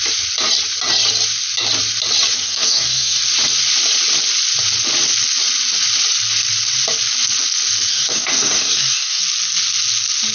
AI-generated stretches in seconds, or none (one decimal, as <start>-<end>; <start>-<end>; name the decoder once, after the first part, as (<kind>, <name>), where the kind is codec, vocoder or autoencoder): 2.4-3.2 (codec, DAC); 7.9-9.2

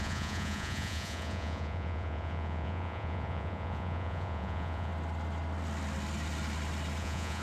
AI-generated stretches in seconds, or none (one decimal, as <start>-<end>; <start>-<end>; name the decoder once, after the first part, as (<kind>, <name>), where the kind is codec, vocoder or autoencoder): 0.0-4.9 (vocoder, Vocos); 7.0-7.4

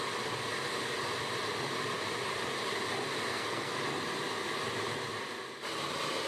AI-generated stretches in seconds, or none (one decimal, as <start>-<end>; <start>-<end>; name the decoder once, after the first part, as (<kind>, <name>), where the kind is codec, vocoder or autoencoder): 3.3-3.8 (codec, SNAC)

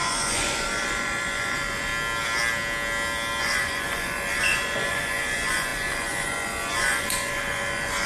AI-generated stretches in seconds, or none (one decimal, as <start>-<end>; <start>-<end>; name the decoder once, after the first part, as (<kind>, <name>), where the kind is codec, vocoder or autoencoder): 0.0-1.9 (vocoder, Vocos); 3.4-8.1

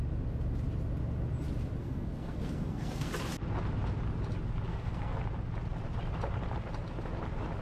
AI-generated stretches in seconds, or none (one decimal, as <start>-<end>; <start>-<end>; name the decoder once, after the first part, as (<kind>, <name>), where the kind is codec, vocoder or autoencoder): 1.8-3.1 (codec, SNAC); 4.7-5.2

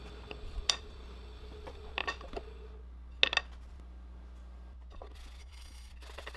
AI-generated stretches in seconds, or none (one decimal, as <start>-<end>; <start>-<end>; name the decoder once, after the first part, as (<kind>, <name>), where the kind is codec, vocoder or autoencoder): 5.4-5.9 (autoencoder, DAC-VAE)

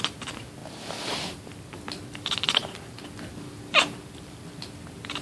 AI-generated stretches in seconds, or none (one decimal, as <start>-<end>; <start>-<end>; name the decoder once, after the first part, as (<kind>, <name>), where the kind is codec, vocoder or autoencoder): none

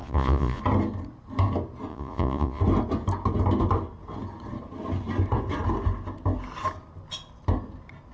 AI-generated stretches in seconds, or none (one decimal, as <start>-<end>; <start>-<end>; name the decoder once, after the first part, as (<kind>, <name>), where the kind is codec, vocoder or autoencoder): 0.0-0.6 (vocoder, Vocos); 1.9-2.6